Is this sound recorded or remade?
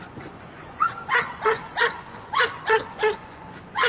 remade